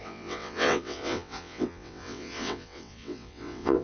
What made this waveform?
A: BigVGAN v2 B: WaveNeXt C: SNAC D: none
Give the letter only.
B